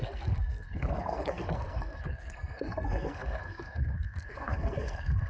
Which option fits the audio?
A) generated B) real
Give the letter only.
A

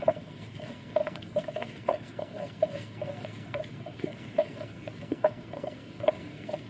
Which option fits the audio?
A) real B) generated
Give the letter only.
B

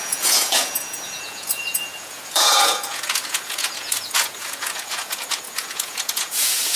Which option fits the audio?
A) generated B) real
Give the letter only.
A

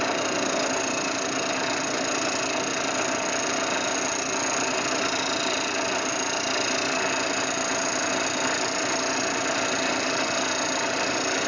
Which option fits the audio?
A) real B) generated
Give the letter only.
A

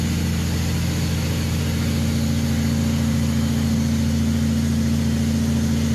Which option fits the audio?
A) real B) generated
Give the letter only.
A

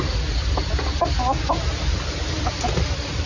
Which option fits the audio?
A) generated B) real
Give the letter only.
B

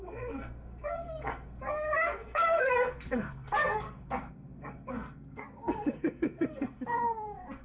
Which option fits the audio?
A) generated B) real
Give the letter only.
A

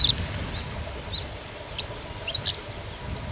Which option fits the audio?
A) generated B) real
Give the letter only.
B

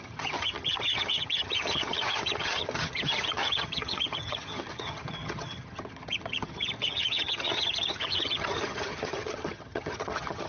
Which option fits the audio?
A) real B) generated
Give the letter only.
B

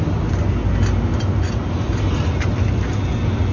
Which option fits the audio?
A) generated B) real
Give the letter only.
B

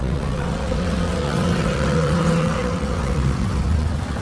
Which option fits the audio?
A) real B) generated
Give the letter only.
B